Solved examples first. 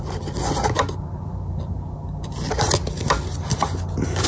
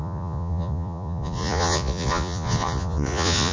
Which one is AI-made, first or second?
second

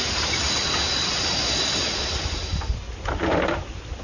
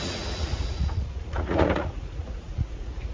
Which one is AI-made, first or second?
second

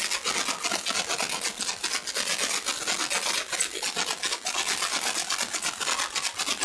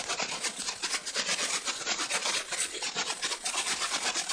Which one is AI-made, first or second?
second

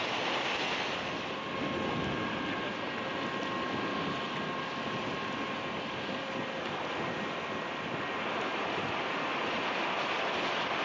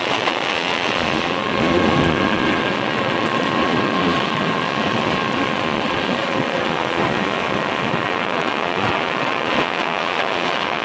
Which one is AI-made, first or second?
second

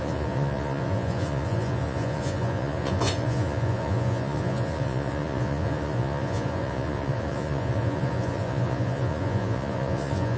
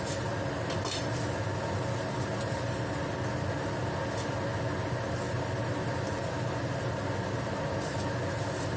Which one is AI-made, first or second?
first